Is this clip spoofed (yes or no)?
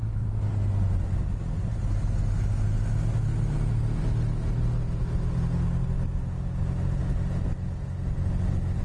no